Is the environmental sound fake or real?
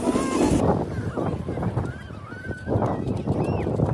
real